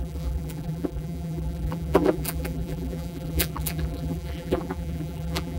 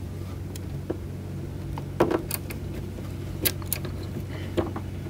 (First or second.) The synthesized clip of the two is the first